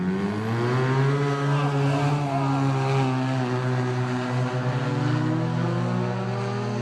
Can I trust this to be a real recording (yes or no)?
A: yes